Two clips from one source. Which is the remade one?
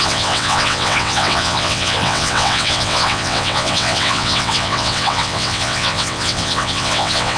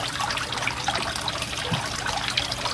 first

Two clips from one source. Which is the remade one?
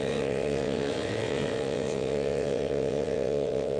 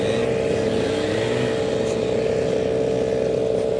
first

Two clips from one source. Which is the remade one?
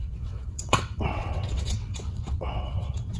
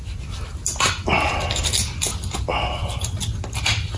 first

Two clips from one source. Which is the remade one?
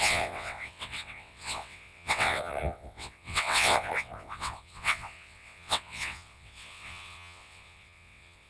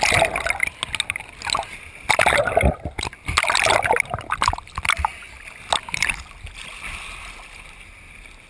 first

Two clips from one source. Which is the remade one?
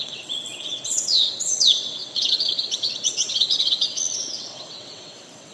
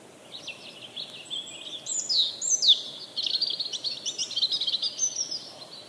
first